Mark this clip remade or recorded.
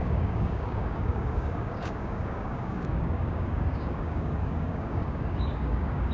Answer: remade